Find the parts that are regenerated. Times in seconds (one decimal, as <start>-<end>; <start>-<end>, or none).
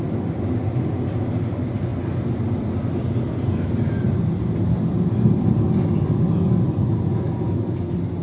none